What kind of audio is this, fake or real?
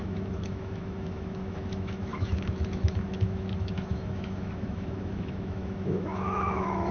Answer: fake